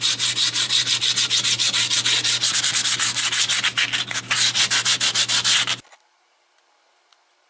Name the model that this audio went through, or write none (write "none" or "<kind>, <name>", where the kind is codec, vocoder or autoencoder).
none